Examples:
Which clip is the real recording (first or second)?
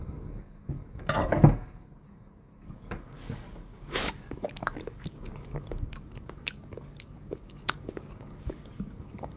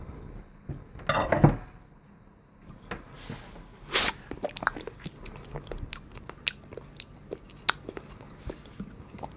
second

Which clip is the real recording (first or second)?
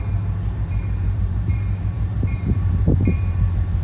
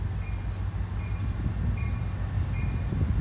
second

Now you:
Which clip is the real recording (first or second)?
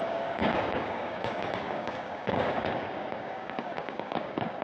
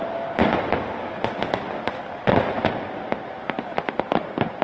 second